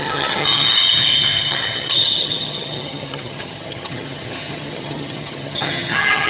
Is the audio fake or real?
fake